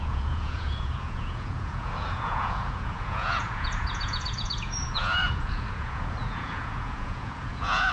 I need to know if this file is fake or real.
fake